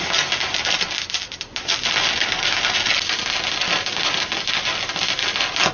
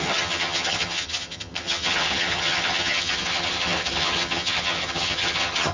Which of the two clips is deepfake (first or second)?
second